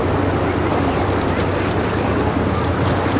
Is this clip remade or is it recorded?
recorded